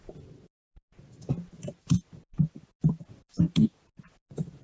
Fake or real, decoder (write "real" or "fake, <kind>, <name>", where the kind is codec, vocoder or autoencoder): real